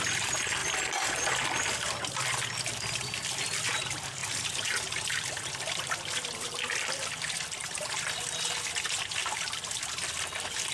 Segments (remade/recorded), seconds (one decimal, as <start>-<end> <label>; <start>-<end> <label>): 0.0-0.6 recorded; 0.6-1.1 remade; 1.1-4.2 recorded; 4.2-7.1 remade; 7.1-9.2 recorded; 9.2-9.9 remade; 9.9-10.7 recorded